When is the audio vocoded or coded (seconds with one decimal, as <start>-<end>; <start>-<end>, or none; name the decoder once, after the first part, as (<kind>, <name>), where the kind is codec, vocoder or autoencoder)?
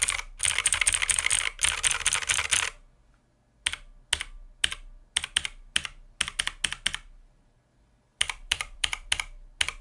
8.1-9.1 (vocoder, BigVGAN v2)